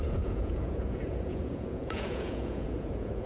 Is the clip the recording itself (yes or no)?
no